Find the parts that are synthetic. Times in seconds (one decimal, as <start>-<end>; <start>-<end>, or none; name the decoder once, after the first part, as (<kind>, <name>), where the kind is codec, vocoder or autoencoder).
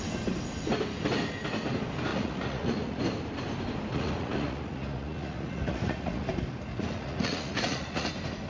2.1-3.0 (vocoder, Vocos); 3.9-6.3; 6.7-8.1